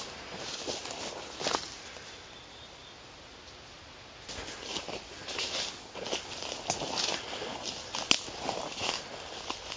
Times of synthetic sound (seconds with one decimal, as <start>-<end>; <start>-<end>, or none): 0.8-3.8